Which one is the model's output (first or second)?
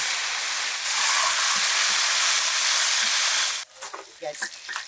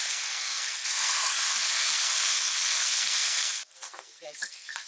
second